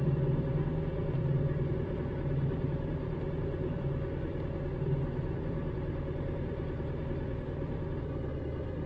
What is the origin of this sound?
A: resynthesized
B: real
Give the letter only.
A